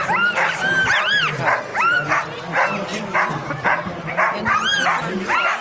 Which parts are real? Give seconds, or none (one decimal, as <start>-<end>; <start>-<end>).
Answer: 0.0-1.7; 2.4-2.9; 4.1-4.7